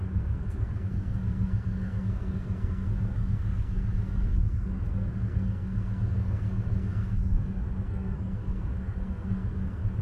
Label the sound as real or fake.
fake